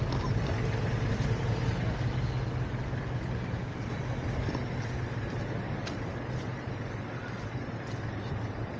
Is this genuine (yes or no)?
yes